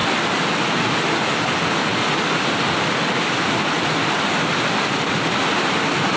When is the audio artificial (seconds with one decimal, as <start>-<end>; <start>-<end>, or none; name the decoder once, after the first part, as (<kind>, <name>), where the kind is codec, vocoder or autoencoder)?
none